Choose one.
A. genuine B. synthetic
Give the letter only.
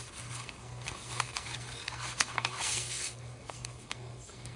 B